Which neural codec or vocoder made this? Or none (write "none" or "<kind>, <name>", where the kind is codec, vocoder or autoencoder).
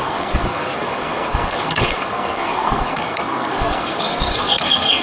codec, SNAC